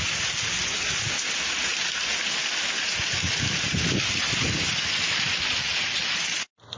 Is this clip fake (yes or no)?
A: no